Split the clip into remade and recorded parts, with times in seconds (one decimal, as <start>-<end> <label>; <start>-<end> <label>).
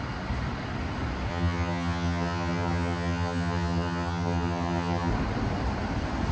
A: 0.0-1.3 recorded; 1.3-5.1 remade; 5.1-6.3 recorded